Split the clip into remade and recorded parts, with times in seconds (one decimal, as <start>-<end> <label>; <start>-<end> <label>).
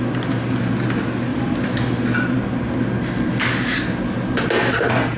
0.0-1.3 recorded; 1.3-1.8 remade; 1.8-5.2 recorded